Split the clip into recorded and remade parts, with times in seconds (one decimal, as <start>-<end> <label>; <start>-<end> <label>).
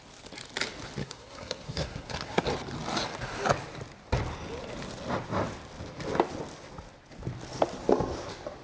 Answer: 0.0-1.0 recorded; 1.0-2.4 remade; 2.4-8.6 recorded